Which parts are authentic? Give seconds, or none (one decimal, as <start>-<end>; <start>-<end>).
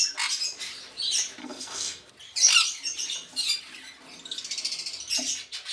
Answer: 0.0-1.4; 2.1-5.7